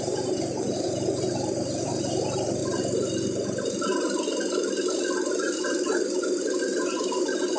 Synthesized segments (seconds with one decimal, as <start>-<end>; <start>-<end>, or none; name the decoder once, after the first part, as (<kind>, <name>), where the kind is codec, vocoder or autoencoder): 0.0-2.6 (vocoder, BigVGAN v2)